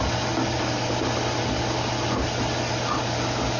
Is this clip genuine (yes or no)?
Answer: yes